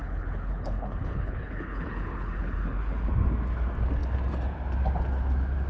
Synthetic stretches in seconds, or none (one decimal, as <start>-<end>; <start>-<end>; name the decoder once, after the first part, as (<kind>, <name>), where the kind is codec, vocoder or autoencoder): 0.0-3.1 (codec, HILCodec)